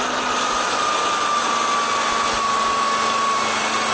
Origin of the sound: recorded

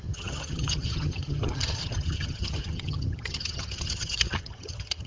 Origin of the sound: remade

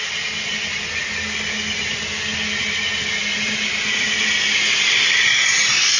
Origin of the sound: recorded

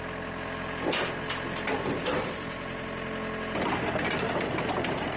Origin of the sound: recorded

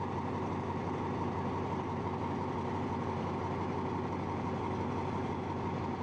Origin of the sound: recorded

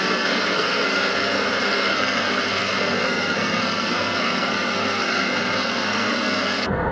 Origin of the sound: remade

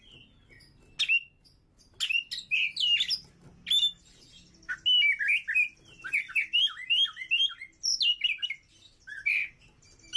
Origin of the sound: recorded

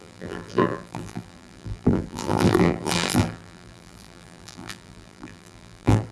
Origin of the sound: remade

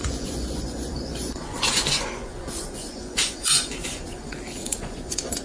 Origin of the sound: remade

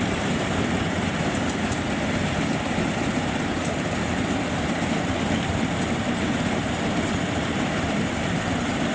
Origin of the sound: remade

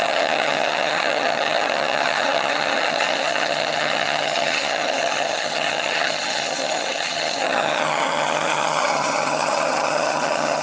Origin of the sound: remade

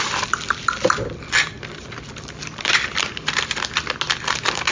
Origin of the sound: recorded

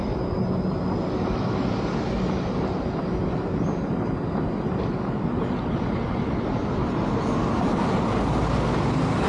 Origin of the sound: recorded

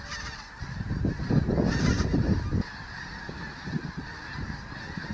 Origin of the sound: recorded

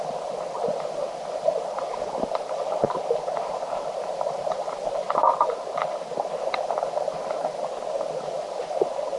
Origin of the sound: recorded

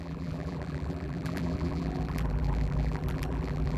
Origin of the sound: remade